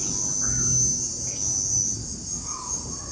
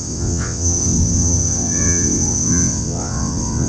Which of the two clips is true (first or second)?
first